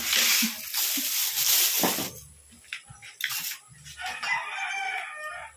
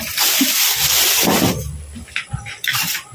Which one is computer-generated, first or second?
second